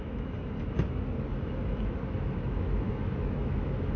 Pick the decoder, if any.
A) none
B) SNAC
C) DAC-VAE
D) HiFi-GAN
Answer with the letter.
C